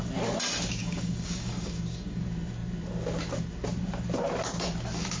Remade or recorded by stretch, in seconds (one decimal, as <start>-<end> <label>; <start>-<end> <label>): 0.0-0.8 recorded; 0.8-2.2 remade; 2.2-5.2 recorded